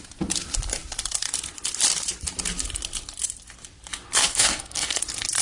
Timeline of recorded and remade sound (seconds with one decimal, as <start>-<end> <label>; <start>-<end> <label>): 0.0-4.2 recorded; 4.2-5.0 remade; 5.0-5.4 recorded